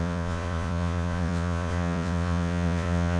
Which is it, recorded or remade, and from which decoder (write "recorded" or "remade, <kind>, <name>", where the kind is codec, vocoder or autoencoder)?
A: remade, vocoder, Vocos